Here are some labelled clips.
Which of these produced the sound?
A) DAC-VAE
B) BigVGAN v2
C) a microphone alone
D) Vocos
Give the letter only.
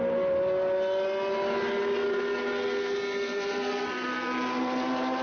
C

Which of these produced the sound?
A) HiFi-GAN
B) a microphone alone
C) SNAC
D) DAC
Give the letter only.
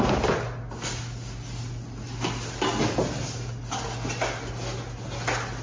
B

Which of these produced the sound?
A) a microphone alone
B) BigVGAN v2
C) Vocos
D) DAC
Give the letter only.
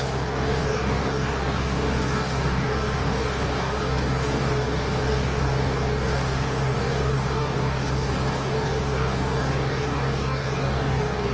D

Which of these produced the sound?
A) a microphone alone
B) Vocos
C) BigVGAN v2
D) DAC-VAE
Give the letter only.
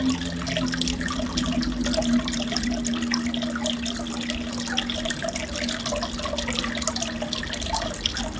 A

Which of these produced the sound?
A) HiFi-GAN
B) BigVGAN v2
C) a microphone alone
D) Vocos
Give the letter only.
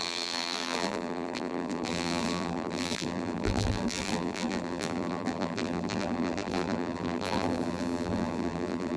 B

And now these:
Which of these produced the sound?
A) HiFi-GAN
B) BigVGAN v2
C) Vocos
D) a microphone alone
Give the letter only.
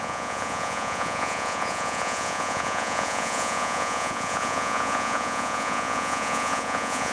C